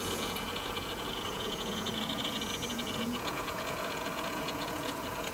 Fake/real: fake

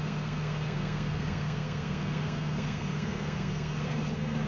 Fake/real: fake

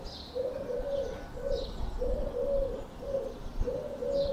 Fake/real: fake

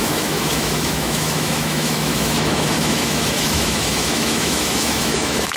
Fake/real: fake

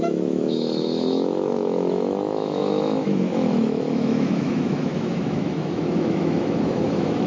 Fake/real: fake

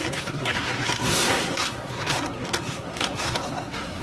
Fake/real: fake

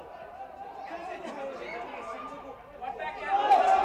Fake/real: real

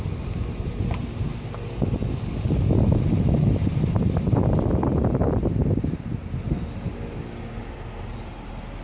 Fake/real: real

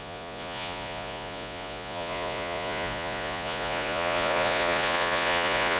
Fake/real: fake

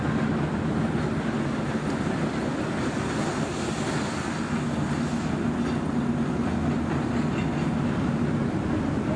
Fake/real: real